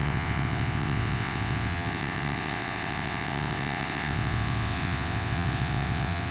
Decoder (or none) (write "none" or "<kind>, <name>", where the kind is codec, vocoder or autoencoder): vocoder, WaveNeXt